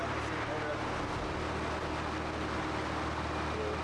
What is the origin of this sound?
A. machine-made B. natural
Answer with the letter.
B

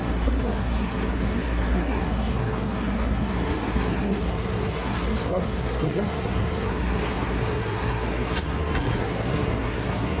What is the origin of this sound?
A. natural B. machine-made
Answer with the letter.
B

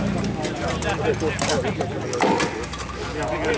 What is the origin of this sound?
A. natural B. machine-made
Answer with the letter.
A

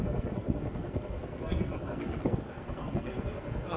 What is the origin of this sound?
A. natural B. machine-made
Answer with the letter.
B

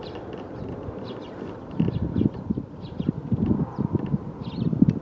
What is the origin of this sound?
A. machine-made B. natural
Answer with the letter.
B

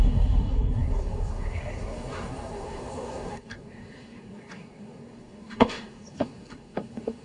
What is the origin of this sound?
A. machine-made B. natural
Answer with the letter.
A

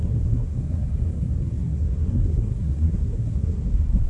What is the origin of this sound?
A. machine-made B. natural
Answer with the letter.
A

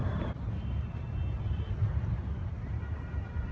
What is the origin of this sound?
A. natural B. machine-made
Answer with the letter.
A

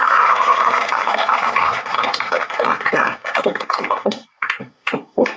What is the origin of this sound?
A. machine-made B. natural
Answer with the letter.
A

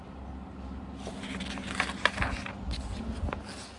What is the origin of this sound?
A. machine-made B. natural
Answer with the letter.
B